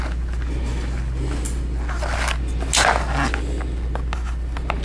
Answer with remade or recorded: recorded